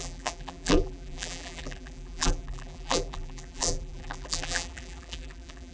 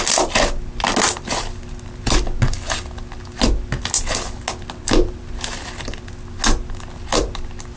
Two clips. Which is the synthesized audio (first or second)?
first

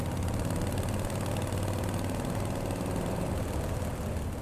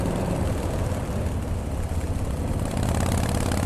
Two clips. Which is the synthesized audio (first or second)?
second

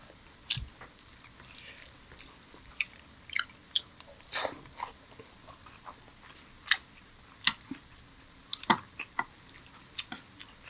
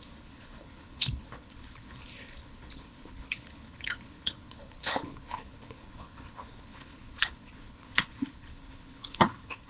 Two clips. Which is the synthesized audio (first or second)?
second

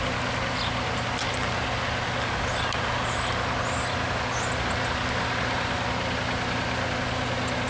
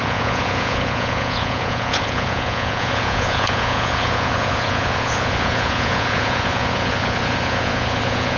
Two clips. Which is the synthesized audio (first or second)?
second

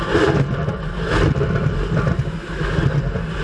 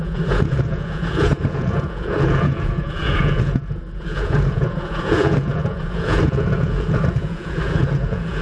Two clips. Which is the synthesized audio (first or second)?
second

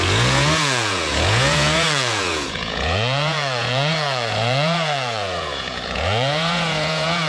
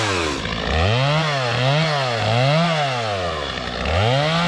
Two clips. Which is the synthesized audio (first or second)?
first